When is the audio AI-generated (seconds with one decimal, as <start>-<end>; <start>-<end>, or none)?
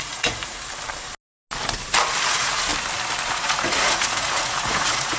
0.0-0.4; 2.3-2.7; 3.3-5.2